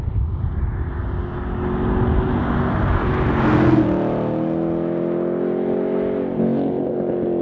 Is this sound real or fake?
real